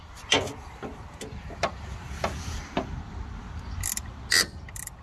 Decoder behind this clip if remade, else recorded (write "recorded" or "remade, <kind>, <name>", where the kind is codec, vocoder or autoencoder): recorded